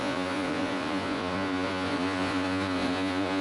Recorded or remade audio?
remade